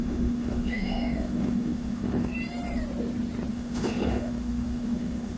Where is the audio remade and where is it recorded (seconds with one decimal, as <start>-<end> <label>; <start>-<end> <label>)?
0.0-2.3 remade; 2.3-3.5 recorded; 3.5-5.4 remade